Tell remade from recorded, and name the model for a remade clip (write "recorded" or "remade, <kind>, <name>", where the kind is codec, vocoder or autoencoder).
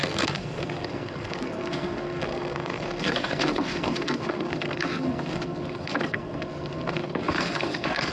remade, codec, SNAC